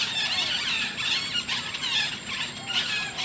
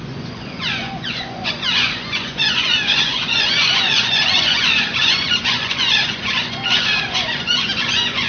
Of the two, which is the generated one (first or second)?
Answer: second